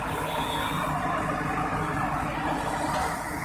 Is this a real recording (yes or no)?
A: yes